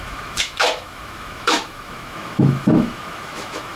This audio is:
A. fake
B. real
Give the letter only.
A